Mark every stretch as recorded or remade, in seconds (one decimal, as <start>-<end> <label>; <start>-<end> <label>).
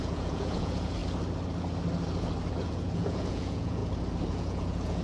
0.0-1.0 remade; 1.0-2.5 recorded; 2.5-3.8 remade; 3.8-4.3 recorded; 4.3-5.0 remade